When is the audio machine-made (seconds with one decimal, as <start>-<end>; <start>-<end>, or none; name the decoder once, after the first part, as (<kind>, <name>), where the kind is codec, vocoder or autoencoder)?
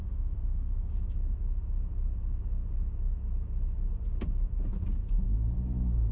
0.0-0.9 (autoencoder, DAC-VAE)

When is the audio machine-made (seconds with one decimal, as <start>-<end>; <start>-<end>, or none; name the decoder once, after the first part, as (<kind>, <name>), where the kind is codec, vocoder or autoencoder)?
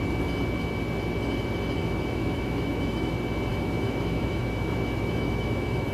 1.8-3.1 (autoencoder, DAC-VAE); 3.5-5.9